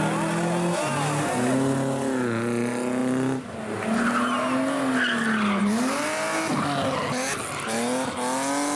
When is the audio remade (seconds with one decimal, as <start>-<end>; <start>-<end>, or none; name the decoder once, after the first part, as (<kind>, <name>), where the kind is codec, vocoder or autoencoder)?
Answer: 3.0-3.6 (vocoder, BigVGAN v2)